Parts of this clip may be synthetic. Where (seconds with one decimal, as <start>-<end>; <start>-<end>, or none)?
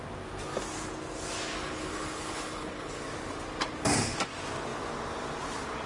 1.6-3.0